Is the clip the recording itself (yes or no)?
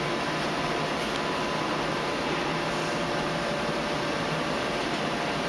no